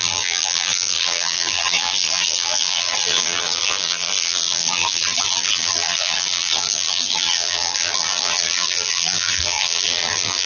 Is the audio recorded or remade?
remade